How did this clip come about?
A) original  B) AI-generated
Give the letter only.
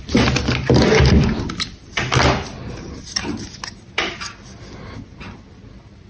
A